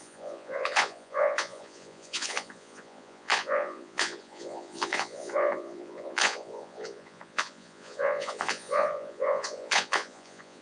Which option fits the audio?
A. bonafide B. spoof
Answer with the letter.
B